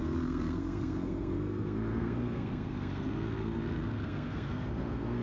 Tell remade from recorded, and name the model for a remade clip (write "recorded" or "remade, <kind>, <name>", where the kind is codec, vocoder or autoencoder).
remade, codec, SNAC